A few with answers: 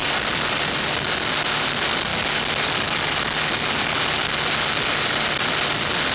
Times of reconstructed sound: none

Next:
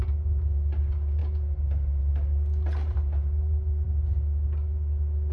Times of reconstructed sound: none

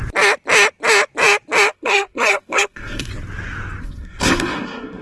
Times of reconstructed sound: 1.7-3.1 (codec, SNAC); 3.8-5.0

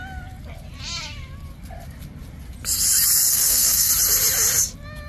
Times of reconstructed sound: 3.3-3.9 (codec, SNAC)

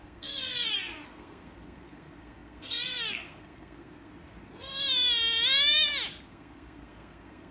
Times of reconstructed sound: 0.0-4.7 (codec, SNAC); 6.2-7.5

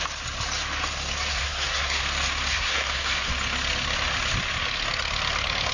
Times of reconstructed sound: 1.3-2.0 (codec, SNAC); 2.5-3.3